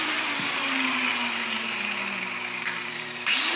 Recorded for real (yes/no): no